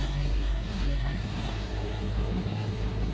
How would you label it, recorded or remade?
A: remade